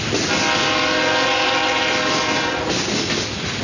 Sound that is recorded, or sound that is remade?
recorded